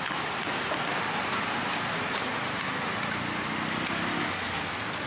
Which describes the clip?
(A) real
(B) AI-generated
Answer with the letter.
A